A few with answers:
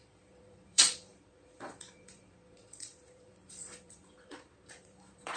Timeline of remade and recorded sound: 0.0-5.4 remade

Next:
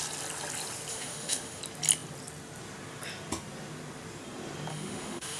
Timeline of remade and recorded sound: 0.0-0.9 recorded; 0.9-1.6 remade; 1.6-4.7 recorded; 4.7-5.4 remade